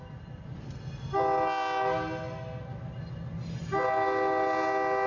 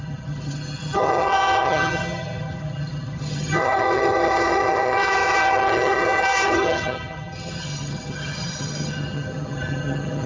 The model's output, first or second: second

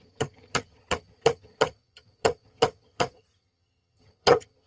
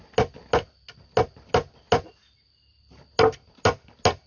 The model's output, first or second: first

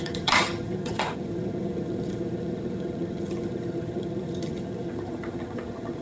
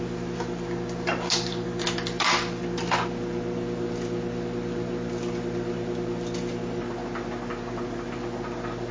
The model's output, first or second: first